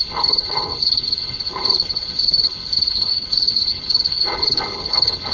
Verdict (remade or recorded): remade